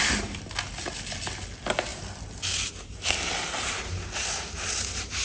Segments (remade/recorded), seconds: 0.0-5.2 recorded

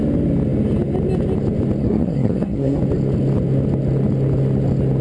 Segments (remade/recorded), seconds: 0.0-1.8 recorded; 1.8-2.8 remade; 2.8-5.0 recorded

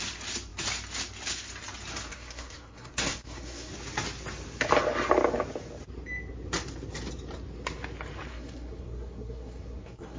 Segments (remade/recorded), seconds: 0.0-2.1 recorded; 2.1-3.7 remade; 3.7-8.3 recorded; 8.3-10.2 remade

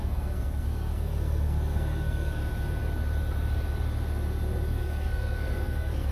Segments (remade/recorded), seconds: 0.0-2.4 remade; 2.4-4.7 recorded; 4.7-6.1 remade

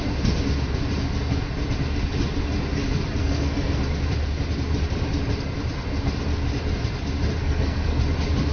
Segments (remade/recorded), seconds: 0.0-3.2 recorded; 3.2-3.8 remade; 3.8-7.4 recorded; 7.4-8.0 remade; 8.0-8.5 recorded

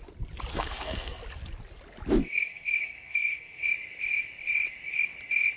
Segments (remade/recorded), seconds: 0.0-0.5 recorded; 0.5-1.2 remade; 1.2-2.2 recorded; 2.2-3.7 remade; 3.7-5.6 recorded